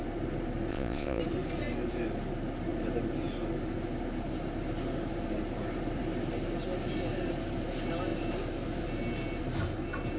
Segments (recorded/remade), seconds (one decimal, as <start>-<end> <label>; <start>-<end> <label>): 0.0-0.7 recorded; 0.7-1.2 remade; 1.2-10.2 recorded